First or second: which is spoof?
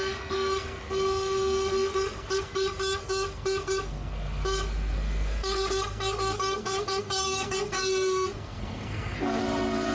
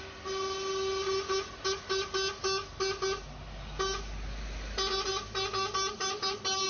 first